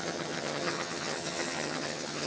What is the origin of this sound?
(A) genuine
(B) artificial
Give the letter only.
B